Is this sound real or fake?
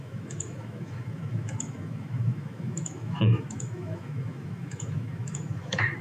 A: fake